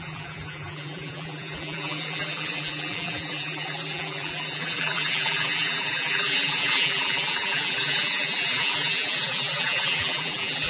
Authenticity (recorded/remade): remade